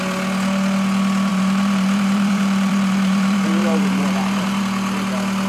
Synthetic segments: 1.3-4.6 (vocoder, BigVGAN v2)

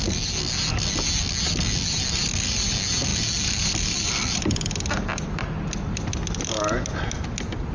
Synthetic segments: none